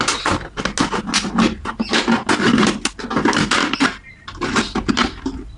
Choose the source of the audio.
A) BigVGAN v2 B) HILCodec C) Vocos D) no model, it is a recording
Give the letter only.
D